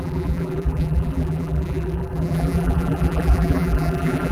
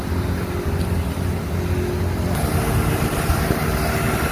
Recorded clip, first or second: second